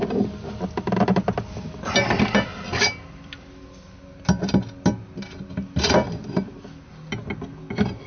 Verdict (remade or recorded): recorded